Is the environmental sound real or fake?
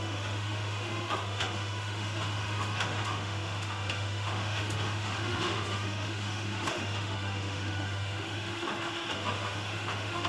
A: fake